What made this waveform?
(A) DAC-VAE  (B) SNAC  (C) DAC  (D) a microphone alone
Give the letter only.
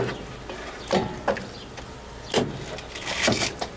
D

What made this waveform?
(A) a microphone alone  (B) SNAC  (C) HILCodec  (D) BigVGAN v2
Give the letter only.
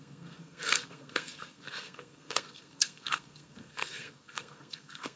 B